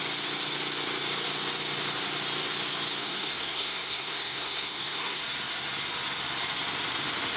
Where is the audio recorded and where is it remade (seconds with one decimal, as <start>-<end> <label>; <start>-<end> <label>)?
0.0-3.0 recorded; 3.0-5.2 remade; 5.2-7.4 recorded